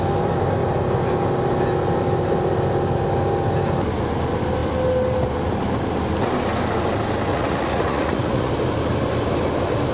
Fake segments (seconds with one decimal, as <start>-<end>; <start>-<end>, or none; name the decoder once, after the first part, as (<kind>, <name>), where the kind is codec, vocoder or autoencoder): 7.3-8.5 (vocoder, Vocos)